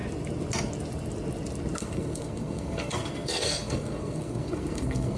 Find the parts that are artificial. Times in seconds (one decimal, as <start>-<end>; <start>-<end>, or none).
1.8-5.2